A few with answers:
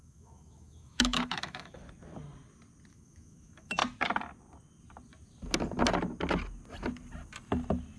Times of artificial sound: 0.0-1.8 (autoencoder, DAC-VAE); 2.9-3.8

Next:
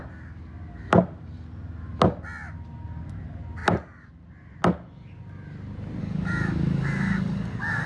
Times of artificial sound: 6.0-7.9 (codec, DAC)

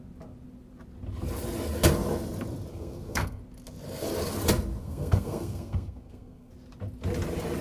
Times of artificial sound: 2.7-3.4 (codec, SNAC); 4.8-6.5

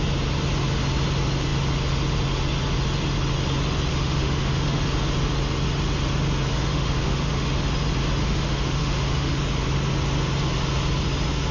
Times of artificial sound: 3.9-4.8 (autoencoder, DAC-VAE); 6.5-7.6; 8.2-9.4